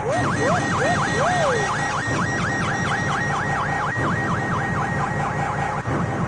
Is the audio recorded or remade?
recorded